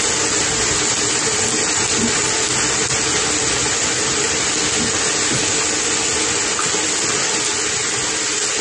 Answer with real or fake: real